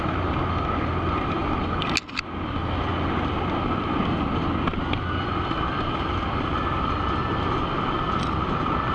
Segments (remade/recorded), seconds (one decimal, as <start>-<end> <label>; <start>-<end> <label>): 0.0-8.9 recorded